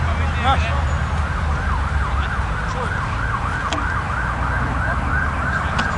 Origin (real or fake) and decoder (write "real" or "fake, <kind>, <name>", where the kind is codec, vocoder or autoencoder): real